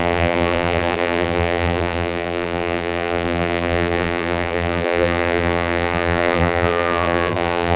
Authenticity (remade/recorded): remade